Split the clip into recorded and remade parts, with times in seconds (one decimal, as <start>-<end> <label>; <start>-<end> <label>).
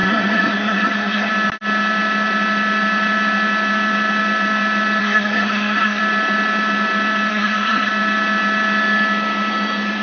0.0-1.3 remade; 1.3-5.0 recorded; 5.0-6.0 remade; 6.0-7.3 recorded; 7.3-7.9 remade; 7.9-10.0 recorded